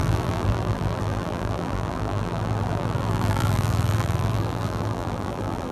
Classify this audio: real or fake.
fake